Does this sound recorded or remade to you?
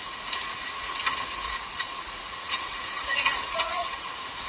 remade